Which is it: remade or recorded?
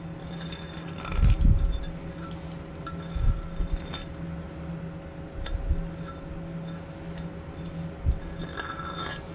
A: recorded